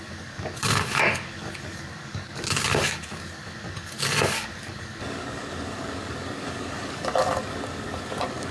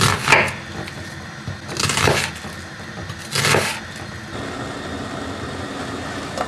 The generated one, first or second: first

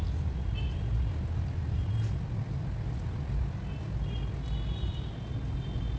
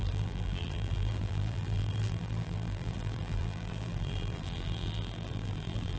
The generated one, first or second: second